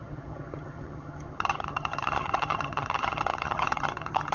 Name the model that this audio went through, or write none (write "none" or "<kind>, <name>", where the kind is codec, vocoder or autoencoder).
vocoder, HiFi-GAN